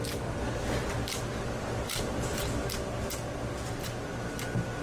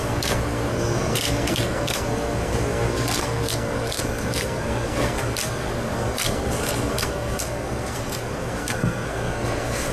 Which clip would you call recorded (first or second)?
first